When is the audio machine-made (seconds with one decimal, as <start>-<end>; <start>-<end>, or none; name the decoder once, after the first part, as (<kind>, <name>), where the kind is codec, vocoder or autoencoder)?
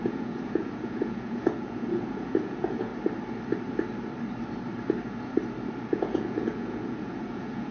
0.0-2.9 (vocoder, Vocos); 5.8-7.7